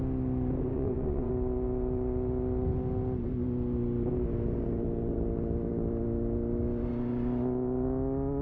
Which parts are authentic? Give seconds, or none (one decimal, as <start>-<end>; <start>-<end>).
0.0-0.7; 1.3-8.4